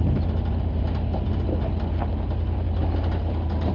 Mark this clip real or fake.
real